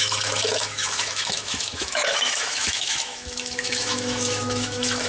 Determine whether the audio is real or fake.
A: fake